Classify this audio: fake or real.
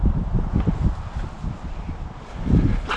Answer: real